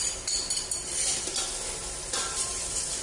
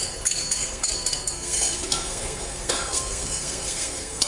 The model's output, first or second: second